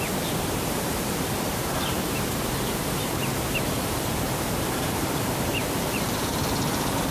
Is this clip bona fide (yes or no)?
no